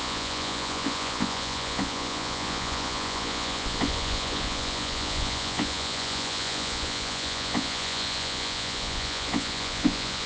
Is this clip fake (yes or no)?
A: yes